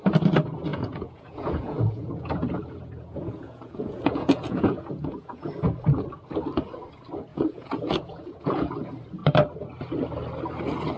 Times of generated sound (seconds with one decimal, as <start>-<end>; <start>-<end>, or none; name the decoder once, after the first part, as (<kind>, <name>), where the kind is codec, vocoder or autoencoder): 0.7-5.5 (vocoder, Vocos); 7.3-8.7